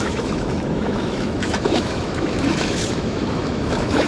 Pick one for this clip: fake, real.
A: fake